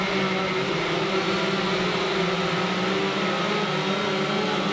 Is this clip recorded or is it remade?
recorded